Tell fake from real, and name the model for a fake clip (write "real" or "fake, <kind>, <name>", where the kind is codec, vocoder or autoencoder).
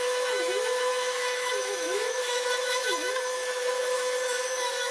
fake, autoencoder, DAC-VAE